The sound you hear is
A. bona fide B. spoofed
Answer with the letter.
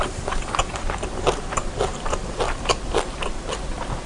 A